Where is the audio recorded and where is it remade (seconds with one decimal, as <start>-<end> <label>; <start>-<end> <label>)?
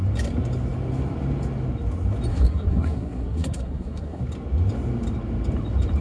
0.0-2.3 recorded; 2.3-4.2 remade; 4.2-6.0 recorded